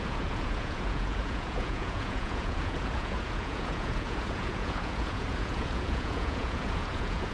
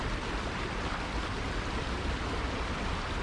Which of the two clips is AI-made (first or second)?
first